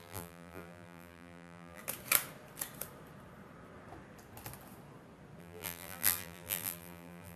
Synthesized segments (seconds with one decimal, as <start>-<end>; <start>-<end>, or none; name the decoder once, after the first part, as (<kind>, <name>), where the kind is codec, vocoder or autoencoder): 0.0-1.8 (vocoder, BigVGAN v2); 5.4-7.4